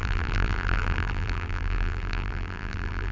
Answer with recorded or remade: remade